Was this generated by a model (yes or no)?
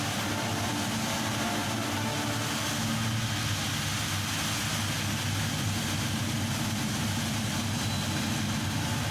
no